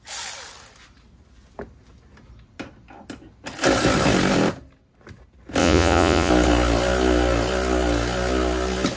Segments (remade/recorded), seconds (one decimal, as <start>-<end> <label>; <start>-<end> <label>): 0.0-5.6 recorded; 5.6-6.3 remade; 6.3-9.0 recorded